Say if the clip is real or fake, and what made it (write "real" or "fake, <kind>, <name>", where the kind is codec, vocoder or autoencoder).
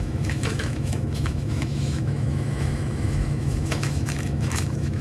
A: fake, autoencoder, DAC-VAE